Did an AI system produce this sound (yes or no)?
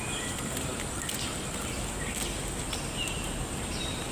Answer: no